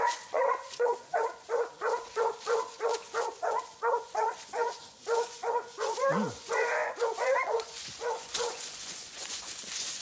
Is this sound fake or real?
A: fake